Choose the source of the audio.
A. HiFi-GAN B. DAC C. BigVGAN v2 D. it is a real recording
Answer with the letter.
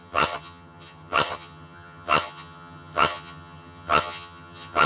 A